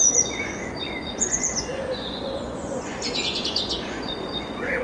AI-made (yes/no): yes